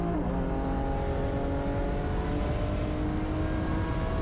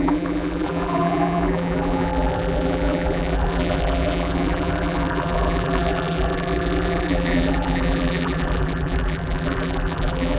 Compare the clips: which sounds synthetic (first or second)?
second